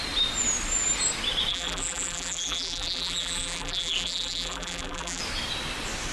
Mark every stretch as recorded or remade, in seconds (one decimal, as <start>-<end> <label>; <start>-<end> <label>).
0.0-1.5 recorded; 1.5-5.2 remade; 5.2-6.1 recorded